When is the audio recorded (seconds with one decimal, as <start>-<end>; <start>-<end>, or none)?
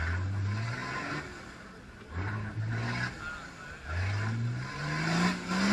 0.0-5.7